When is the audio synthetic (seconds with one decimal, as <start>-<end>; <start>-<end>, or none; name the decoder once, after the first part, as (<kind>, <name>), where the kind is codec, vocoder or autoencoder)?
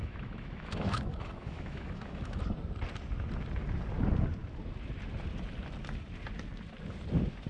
0.0-2.4 (autoencoder, DAC-VAE)